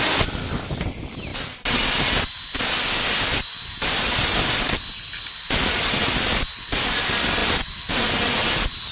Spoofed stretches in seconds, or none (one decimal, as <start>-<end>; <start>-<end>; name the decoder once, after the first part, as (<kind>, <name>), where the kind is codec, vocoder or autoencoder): none